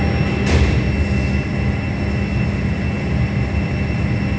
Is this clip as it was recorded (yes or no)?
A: yes